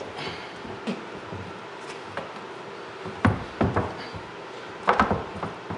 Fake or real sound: real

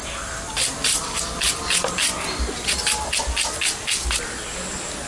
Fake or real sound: real